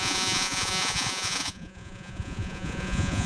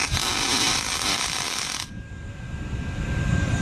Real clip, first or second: second